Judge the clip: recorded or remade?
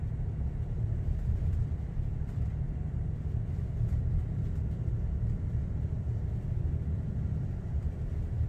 remade